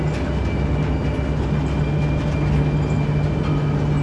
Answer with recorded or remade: recorded